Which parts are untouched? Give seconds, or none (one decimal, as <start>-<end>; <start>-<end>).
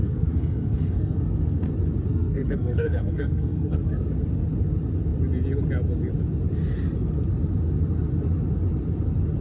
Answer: 1.7-2.1; 4.1-9.4